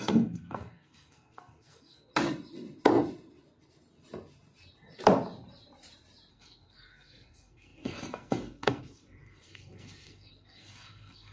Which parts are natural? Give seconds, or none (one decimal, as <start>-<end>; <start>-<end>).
2.1-6.3